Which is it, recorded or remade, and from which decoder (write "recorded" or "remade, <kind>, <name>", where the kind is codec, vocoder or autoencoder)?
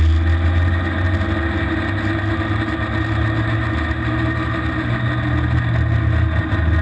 recorded